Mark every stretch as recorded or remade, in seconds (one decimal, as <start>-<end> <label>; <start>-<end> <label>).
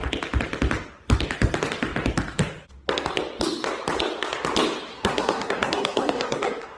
0.0-4.9 recorded; 4.9-6.8 remade